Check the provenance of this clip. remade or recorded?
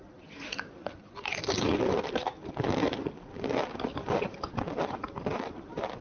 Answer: remade